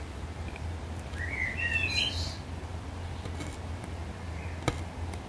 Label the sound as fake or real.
real